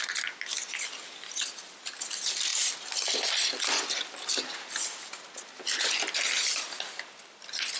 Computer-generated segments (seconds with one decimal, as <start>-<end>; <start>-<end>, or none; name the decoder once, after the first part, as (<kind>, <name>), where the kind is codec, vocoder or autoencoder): none